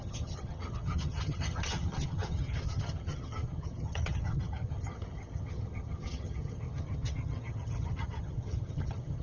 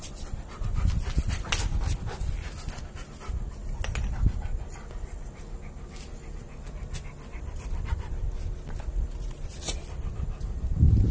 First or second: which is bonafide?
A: second